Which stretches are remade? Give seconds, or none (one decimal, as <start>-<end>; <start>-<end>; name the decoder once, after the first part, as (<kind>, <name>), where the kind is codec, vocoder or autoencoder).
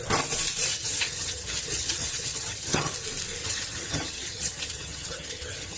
0.7-2.9 (vocoder, HiFi-GAN); 3.4-5.8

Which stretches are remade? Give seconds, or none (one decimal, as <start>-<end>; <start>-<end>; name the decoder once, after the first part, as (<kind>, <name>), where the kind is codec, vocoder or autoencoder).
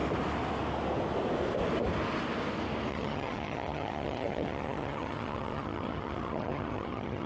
2.9-7.3 (vocoder, HiFi-GAN)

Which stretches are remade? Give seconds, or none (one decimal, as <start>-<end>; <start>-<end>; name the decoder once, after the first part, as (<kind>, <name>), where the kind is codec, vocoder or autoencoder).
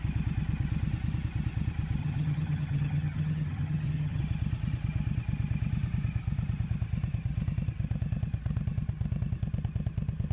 2.0-4.2 (vocoder, HiFi-GAN)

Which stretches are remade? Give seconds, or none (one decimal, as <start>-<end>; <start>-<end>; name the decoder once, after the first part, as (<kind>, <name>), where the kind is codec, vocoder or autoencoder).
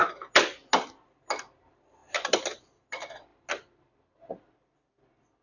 none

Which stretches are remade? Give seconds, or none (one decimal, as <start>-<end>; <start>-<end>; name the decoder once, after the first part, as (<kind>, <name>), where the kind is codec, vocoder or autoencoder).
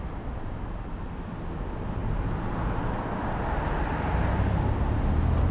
none